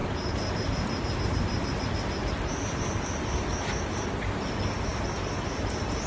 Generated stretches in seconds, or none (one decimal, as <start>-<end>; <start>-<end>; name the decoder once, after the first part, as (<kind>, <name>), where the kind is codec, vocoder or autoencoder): none